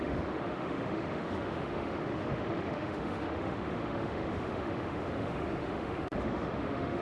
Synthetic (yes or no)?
yes